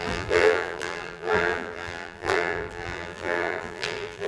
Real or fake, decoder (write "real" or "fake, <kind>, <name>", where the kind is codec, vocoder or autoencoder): fake, vocoder, BigVGAN v2